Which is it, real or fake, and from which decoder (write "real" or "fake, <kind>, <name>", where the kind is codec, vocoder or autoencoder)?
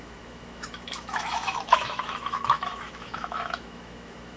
fake, autoencoder, DAC-VAE